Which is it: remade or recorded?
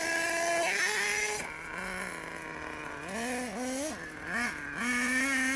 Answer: recorded